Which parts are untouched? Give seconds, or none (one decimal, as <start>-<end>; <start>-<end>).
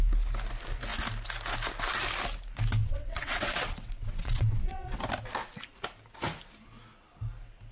0.0-2.8; 5.0-7.7